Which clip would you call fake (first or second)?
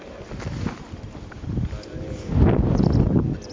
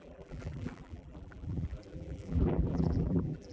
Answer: second